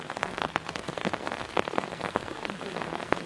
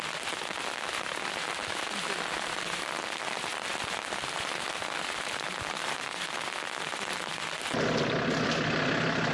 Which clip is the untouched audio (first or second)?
second